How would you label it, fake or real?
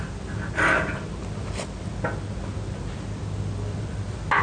real